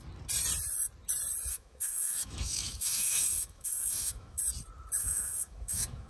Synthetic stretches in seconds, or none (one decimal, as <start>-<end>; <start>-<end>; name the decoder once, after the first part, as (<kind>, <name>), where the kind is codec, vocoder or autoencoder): 1.5-4.4 (autoencoder, DAC-VAE); 5.0-6.1